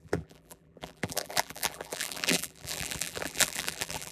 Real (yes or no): no